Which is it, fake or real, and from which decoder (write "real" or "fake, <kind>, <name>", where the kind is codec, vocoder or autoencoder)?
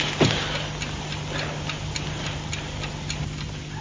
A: real